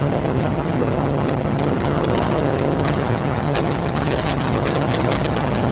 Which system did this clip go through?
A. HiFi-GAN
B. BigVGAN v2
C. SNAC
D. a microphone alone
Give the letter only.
A